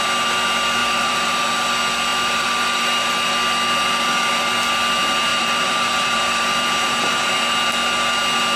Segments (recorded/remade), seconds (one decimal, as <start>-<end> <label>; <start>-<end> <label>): 0.0-0.8 recorded; 0.8-1.4 remade; 1.4-2.1 recorded; 2.1-3.1 remade; 3.1-5.3 recorded; 5.3-7.3 remade; 7.3-8.6 recorded